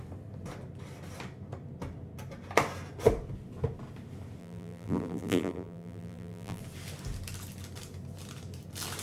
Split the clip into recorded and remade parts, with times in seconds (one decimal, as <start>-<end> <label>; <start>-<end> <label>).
0.0-4.4 recorded; 4.4-6.6 remade; 6.6-9.0 recorded